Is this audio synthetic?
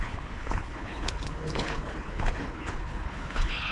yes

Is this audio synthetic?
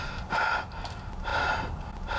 no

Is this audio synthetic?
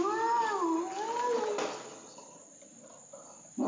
no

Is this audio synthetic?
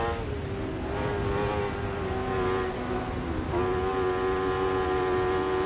no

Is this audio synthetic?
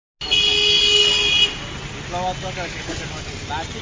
no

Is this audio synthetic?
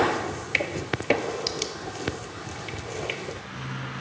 no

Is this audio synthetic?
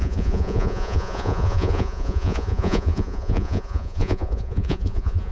yes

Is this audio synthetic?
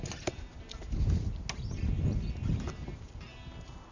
no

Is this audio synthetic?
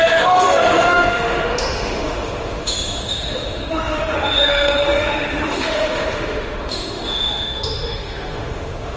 yes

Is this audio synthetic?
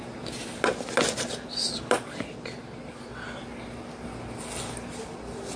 no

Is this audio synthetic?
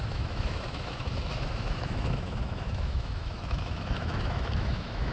yes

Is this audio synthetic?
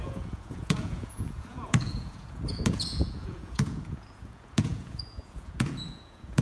yes